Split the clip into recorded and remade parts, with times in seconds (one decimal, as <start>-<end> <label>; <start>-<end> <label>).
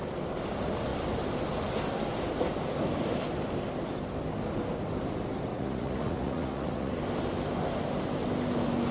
0.0-5.5 recorded; 5.5-6.9 remade; 6.9-8.9 recorded